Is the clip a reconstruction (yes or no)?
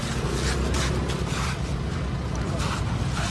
no